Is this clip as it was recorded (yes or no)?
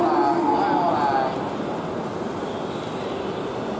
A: yes